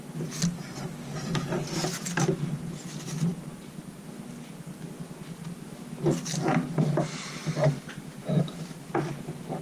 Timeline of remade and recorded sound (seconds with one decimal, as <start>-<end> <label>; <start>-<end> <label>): 0.0-8.2 recorded; 8.2-8.9 remade; 8.9-9.6 recorded